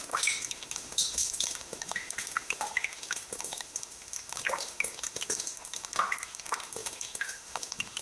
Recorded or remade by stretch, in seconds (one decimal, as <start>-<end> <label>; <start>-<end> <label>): 0.0-8.0 remade